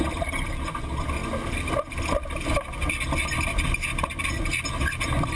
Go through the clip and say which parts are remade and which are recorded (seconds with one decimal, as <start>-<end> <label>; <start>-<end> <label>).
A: 0.0-5.3 recorded